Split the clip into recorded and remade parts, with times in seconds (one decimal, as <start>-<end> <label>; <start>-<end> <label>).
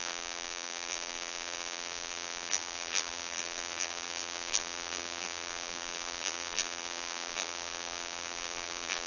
0.0-9.1 remade